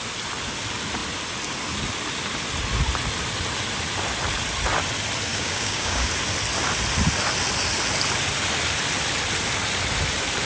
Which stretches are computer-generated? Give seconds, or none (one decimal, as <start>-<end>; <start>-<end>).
5.3-6.1